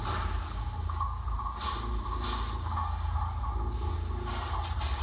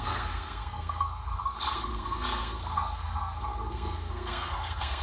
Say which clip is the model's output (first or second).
second